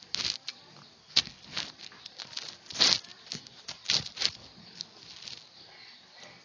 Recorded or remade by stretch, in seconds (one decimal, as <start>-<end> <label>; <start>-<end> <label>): 0.0-6.4 recorded